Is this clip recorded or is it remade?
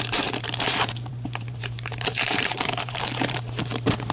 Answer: remade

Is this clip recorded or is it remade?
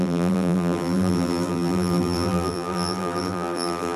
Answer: remade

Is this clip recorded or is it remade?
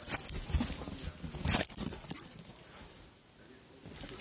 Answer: remade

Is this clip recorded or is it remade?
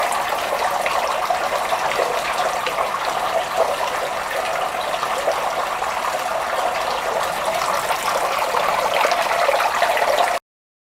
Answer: recorded